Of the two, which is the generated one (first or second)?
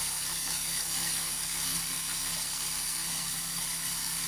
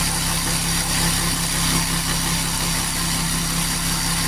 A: first